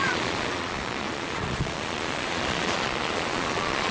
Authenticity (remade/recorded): remade